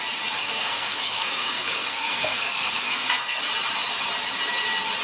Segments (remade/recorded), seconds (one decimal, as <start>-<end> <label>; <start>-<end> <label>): 0.0-0.4 recorded; 0.4-3.4 remade; 3.4-5.0 recorded